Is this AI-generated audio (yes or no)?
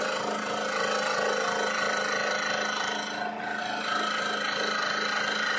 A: no